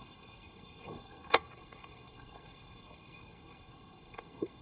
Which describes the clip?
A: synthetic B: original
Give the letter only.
A